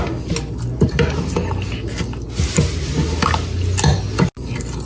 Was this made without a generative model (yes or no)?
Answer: yes